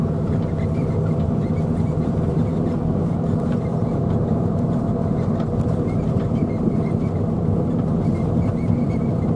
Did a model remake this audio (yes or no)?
yes